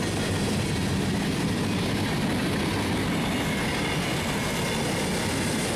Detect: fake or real real